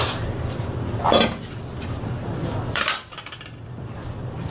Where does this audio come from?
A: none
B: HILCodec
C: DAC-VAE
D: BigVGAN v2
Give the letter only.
D